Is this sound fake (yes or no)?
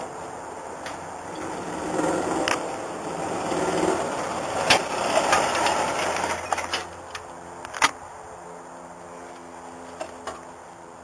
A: no